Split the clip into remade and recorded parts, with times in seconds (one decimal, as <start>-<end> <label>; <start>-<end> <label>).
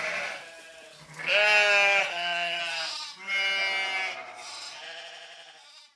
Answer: 0.0-2.0 recorded; 2.0-2.6 remade; 2.6-6.0 recorded